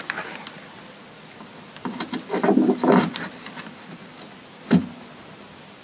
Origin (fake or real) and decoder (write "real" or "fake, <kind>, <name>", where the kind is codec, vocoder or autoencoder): real